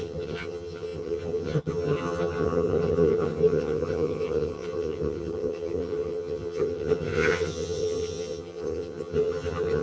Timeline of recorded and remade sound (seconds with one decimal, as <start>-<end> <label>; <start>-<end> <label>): 0.0-9.8 remade